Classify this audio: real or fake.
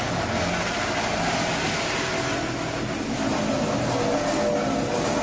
real